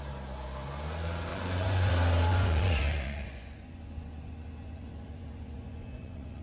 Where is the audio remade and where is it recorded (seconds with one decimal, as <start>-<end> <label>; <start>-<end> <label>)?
0.0-1.3 recorded; 1.3-1.9 remade; 1.9-2.3 recorded; 2.3-6.4 remade